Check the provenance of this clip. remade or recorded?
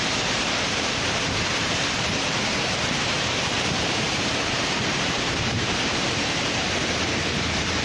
remade